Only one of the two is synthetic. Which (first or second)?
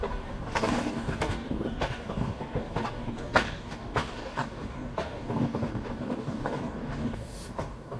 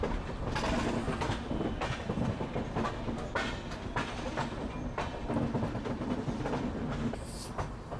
first